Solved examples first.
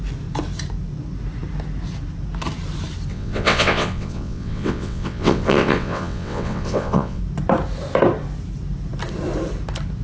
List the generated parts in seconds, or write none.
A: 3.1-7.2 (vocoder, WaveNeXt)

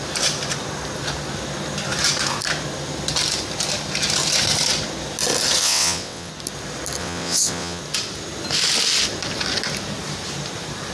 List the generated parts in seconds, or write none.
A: 5.6-6.3 (vocoder, WaveNeXt); 7.0-7.8

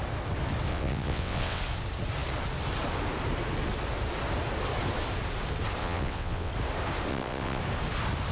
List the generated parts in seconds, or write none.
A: 0.7-1.6 (vocoder, WaveNeXt); 5.8-6.5; 7.1-7.6

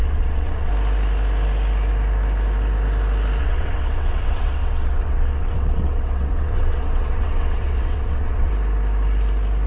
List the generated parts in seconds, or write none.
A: 0.0-0.7 (vocoder, WaveNeXt); 3.4-8.5